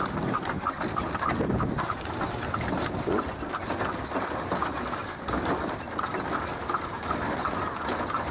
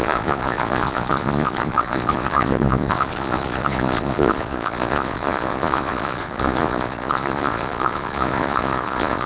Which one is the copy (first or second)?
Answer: second